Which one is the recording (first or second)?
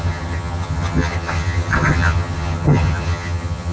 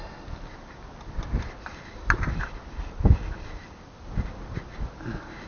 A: second